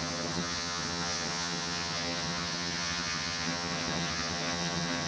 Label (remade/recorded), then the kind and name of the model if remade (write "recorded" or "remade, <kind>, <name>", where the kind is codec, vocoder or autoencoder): remade, vocoder, HiFi-GAN